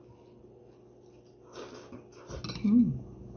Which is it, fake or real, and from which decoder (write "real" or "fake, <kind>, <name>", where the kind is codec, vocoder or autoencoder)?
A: real